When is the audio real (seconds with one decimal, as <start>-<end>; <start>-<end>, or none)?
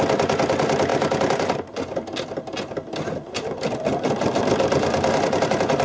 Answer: 0.0-5.8